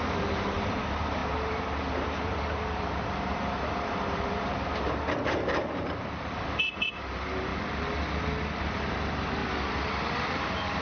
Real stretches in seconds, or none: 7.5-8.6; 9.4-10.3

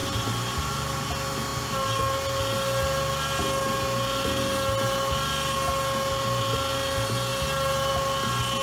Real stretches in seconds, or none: 1.1-8.6